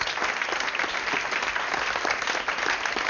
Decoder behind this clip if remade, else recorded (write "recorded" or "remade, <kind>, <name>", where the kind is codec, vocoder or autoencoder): remade, vocoder, BigVGAN v2